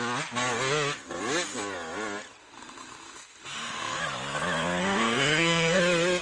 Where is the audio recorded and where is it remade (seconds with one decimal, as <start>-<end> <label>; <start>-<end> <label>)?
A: 0.0-2.4 recorded; 2.4-4.0 remade; 4.0-4.8 recorded; 4.8-5.8 remade; 5.8-6.2 recorded